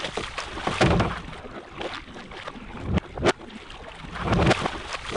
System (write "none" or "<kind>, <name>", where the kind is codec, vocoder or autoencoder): none